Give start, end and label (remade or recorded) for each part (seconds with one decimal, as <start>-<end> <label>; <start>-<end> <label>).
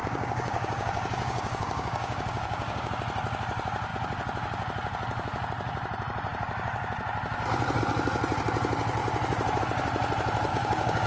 0.0-2.9 remade; 2.9-10.5 recorded; 10.5-11.1 remade